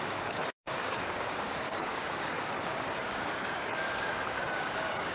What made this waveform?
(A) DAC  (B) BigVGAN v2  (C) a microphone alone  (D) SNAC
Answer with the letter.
A